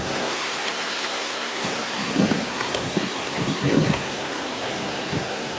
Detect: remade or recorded remade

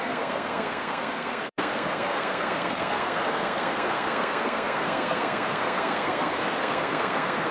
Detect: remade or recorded remade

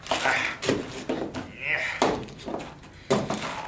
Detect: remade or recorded recorded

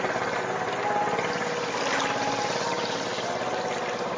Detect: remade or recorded recorded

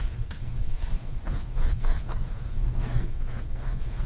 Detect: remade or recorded remade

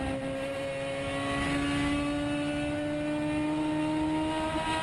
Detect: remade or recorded recorded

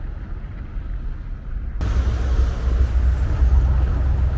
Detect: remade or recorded recorded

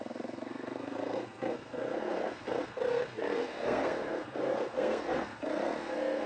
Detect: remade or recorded remade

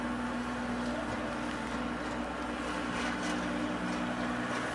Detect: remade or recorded recorded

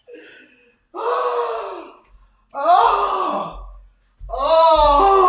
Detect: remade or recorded recorded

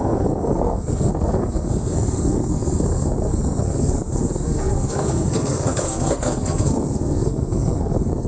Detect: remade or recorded remade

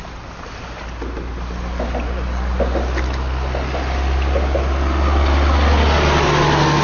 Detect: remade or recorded recorded